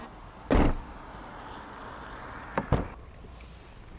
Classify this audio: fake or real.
real